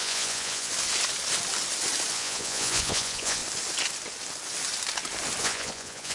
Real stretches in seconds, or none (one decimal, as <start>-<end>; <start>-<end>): 0.7-2.1; 3.4-5.4